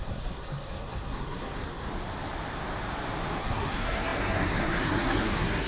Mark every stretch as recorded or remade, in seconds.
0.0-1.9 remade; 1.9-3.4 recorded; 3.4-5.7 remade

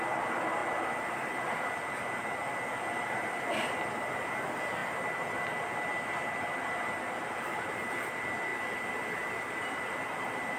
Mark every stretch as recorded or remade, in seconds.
0.0-0.6 remade; 0.6-1.1 recorded; 1.1-4.8 remade; 4.8-6.4 recorded; 6.4-10.6 remade

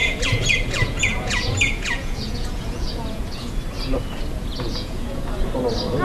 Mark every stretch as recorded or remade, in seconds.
0.0-3.6 remade; 3.6-4.5 recorded; 4.5-5.3 remade; 5.3-6.0 recorded

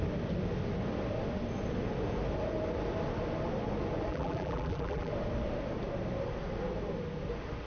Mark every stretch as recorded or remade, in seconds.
0.0-4.1 recorded; 4.1-5.1 remade; 5.1-7.7 recorded

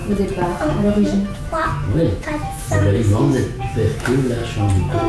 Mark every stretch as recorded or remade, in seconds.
0.0-0.7 recorded; 0.7-4.4 remade; 4.4-5.1 recorded

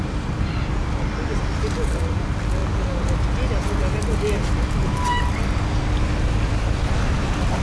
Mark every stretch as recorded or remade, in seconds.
0.0-2.6 remade; 2.6-7.6 recorded

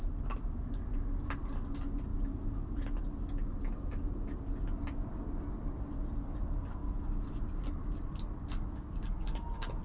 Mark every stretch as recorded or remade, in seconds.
0.0-9.8 recorded

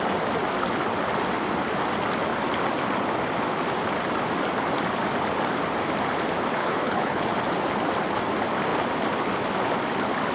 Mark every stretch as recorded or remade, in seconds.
0.0-6.6 recorded; 6.6-7.3 remade; 7.3-10.3 recorded